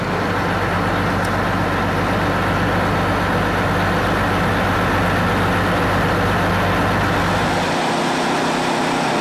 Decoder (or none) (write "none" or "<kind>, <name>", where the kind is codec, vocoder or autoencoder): none